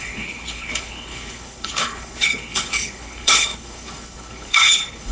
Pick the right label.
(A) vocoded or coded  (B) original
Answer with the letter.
A